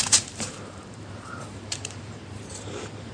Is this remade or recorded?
remade